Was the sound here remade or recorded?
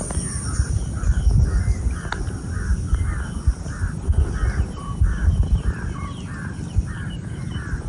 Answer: recorded